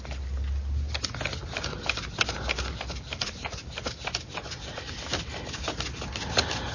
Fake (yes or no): no